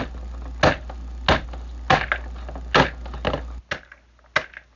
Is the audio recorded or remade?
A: recorded